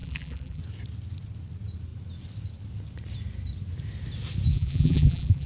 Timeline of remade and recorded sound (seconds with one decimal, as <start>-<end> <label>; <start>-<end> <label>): 0.0-0.6 remade; 0.6-4.5 recorded; 4.5-5.5 remade